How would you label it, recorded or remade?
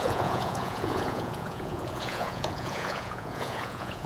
remade